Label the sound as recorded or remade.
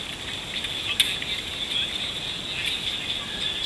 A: recorded